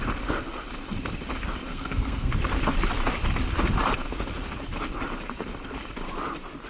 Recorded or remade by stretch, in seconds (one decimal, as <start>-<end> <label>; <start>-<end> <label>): 0.0-1.7 recorded; 1.7-2.3 remade; 2.3-6.7 recorded